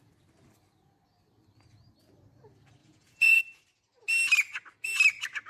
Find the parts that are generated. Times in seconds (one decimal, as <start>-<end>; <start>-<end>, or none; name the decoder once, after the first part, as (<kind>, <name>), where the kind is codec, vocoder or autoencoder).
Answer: 2.8-3.4 (vocoder, Vocos)